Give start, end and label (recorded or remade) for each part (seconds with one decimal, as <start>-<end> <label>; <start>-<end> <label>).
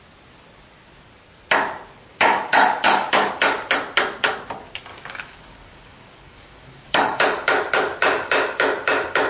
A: 0.0-2.1 recorded; 2.1-3.3 remade; 3.3-4.9 recorded; 4.9-7.2 remade; 7.2-9.3 recorded